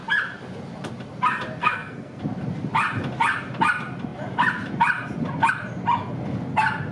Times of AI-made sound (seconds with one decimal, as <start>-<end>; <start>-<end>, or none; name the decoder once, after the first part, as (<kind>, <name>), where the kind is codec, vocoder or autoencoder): 1.6-2.2 (codec, SNAC)